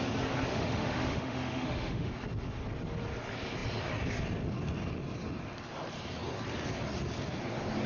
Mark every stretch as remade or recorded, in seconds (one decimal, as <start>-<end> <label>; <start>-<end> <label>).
0.0-0.5 recorded; 0.5-2.1 remade; 2.1-7.9 recorded

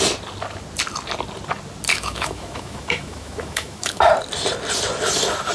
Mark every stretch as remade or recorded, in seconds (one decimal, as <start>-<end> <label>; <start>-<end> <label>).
0.0-1.9 recorded; 1.9-4.1 remade; 4.1-5.5 recorded

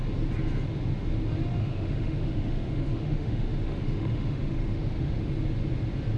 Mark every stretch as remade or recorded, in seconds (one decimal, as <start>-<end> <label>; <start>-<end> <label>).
0.0-1.6 recorded; 1.6-5.3 remade; 5.3-6.2 recorded